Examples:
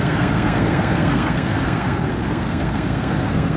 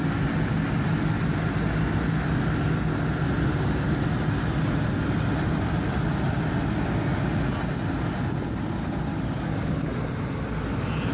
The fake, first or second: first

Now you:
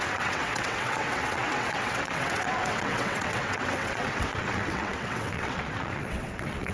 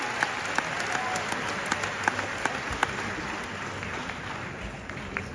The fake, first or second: first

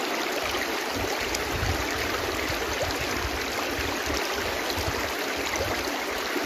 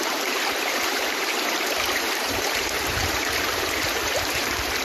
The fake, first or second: second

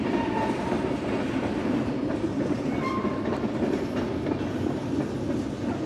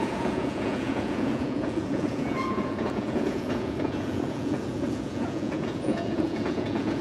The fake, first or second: second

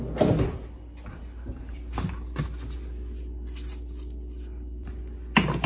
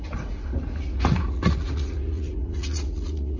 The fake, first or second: second